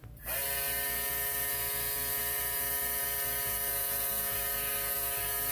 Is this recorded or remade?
recorded